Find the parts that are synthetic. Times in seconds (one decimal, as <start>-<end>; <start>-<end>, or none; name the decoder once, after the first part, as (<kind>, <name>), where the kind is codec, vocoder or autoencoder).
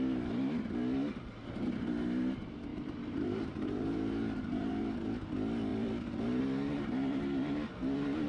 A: 2.7-4.8 (vocoder, BigVGAN v2)